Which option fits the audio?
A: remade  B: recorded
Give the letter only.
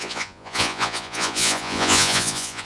A